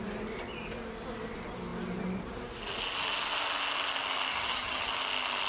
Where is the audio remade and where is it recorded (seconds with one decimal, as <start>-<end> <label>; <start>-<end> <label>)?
0.0-4.3 recorded; 4.3-4.9 remade; 4.9-5.5 recorded